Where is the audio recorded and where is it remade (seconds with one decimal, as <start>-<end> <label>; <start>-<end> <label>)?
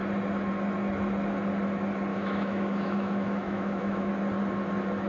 0.0-2.1 recorded; 2.1-4.1 remade; 4.1-5.1 recorded